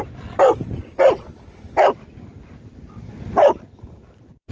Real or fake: real